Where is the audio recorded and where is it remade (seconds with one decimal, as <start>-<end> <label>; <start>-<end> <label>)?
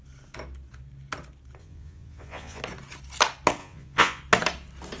0.0-1.6 recorded; 1.6-2.6 remade; 2.6-3.6 recorded; 3.6-4.2 remade; 4.2-5.0 recorded